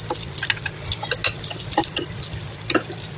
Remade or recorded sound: recorded